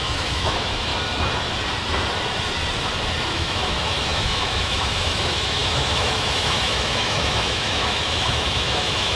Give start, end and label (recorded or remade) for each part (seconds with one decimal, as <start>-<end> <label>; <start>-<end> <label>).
0.0-0.9 remade; 0.9-3.3 recorded; 3.3-9.2 remade

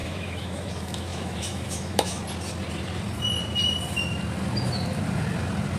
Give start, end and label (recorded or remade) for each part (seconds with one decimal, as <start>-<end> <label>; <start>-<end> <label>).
0.0-2.2 remade; 2.2-5.8 recorded

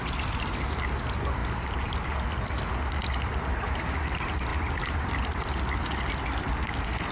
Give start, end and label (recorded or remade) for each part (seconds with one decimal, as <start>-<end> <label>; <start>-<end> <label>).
0.0-7.1 recorded

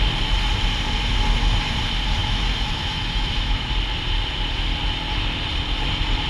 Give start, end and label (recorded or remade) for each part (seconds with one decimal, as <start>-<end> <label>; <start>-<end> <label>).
0.0-2.2 recorded; 2.2-3.7 remade; 3.7-6.3 recorded

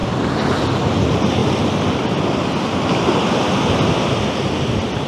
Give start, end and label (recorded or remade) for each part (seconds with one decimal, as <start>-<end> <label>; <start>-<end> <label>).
0.0-5.1 recorded

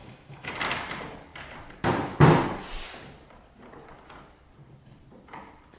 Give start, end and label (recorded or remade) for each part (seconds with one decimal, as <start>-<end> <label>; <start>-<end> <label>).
0.0-0.5 remade; 0.5-5.8 recorded

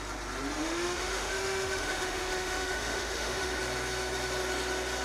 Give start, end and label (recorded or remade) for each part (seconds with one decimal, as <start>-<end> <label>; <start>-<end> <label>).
0.0-0.6 recorded; 0.6-3.6 remade; 3.6-5.0 recorded

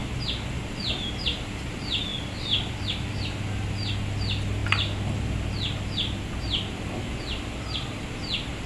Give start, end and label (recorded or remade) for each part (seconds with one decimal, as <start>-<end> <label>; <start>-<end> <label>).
0.0-8.7 recorded